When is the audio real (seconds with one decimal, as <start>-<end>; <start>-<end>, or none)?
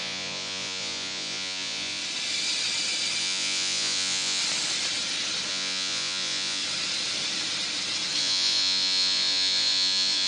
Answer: 2.0-3.2; 4.4-5.5; 6.6-8.2